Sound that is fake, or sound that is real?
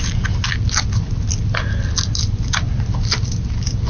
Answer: real